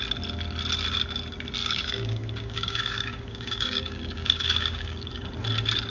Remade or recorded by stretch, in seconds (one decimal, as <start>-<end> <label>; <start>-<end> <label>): 0.0-1.6 recorded; 1.6-5.1 remade; 5.1-5.9 recorded